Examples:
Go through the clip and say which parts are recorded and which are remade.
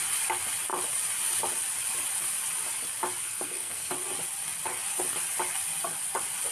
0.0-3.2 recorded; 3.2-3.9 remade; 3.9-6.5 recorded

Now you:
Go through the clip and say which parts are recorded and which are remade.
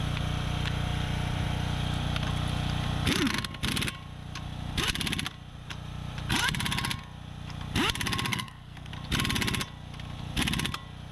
0.0-8.3 recorded; 8.3-8.9 remade; 8.9-11.1 recorded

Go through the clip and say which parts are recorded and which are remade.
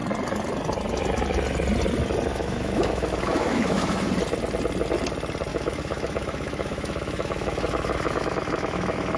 0.0-2.3 recorded; 2.3-4.1 remade; 4.1-5.5 recorded; 5.5-9.2 remade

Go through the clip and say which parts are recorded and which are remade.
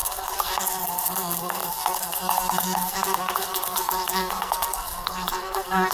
0.0-5.9 remade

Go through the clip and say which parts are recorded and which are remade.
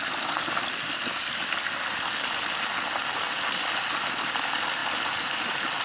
0.0-5.8 recorded